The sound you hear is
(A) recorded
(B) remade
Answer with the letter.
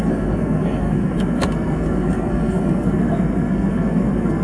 B